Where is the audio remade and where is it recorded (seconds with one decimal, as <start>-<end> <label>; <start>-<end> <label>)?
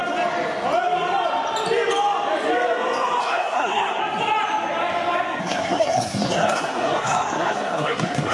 0.0-3.2 recorded; 3.2-4.0 remade; 4.0-5.4 recorded; 5.4-8.3 remade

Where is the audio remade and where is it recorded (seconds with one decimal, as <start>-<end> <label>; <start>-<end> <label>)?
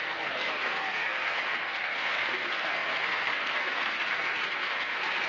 0.0-5.3 remade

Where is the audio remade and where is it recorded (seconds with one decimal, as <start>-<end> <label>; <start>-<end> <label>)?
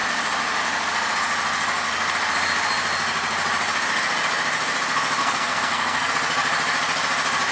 0.0-5.2 recorded; 5.2-6.1 remade; 6.1-7.5 recorded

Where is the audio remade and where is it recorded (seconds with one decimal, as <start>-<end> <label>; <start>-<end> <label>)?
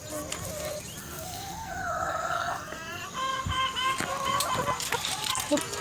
0.0-1.0 recorded; 1.0-3.0 remade; 3.0-5.8 recorded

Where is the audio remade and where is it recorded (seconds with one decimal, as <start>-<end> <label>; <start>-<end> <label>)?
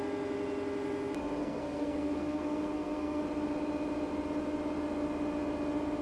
0.0-1.4 recorded; 1.4-3.2 remade; 3.2-6.0 recorded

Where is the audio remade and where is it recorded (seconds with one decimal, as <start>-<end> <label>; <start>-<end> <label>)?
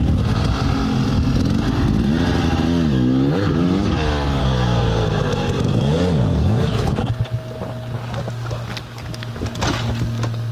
0.0-4.4 recorded; 4.4-7.1 remade; 7.1-10.5 recorded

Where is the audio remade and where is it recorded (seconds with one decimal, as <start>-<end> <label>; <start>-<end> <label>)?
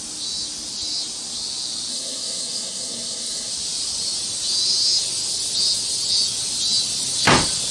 0.0-1.9 recorded; 1.9-3.5 remade; 3.5-7.7 recorded